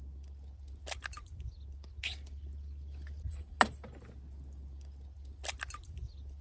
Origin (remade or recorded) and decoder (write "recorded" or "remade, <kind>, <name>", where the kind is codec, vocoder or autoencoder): recorded